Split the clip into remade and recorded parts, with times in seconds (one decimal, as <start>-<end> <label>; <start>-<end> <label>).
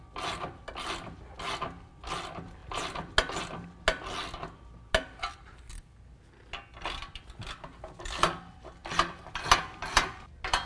0.0-10.7 recorded